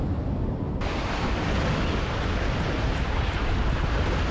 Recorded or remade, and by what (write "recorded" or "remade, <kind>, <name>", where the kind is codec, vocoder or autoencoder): recorded